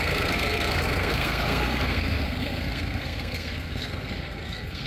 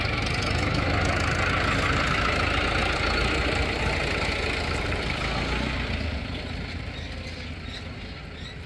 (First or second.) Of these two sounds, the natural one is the second